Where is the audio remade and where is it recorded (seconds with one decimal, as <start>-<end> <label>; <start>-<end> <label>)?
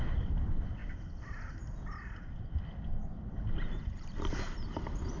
0.0-5.2 recorded